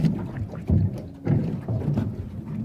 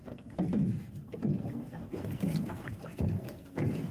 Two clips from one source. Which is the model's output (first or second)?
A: second